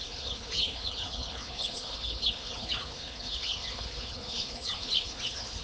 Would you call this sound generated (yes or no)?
yes